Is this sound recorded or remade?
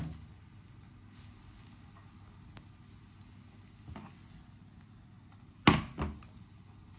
recorded